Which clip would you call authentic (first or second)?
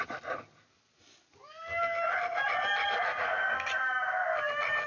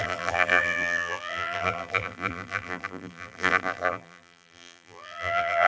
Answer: first